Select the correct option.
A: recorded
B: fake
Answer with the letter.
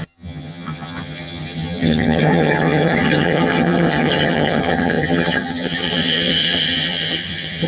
B